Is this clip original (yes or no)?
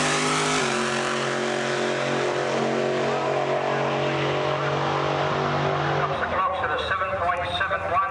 yes